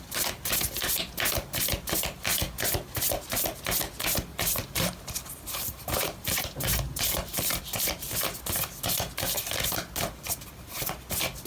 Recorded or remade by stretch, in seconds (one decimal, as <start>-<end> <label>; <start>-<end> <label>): 0.0-4.3 recorded; 4.3-7.6 remade; 7.6-11.5 recorded